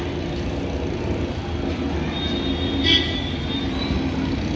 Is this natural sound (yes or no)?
yes